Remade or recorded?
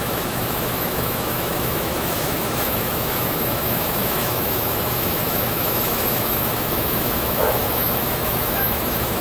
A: remade